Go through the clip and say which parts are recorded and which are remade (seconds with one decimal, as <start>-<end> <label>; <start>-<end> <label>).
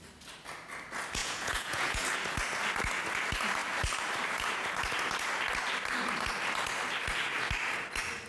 0.0-1.2 recorded; 1.2-2.0 remade; 2.0-8.3 recorded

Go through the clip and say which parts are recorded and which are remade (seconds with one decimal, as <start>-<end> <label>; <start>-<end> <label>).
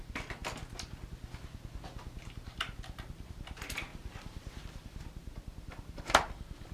0.0-3.9 recorded; 3.9-4.6 remade; 4.6-6.7 recorded